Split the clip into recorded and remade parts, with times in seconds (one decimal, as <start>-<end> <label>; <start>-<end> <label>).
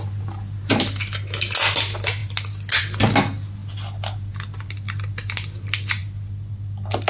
0.0-7.1 recorded